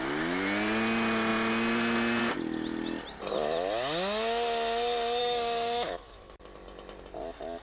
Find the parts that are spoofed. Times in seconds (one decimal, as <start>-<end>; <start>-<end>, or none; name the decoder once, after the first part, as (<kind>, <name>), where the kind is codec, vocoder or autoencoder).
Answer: 5.2-6.4 (autoencoder, DAC-VAE)